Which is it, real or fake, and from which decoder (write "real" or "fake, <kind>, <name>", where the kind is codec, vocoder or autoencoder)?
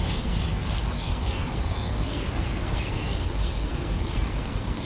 fake, codec, SNAC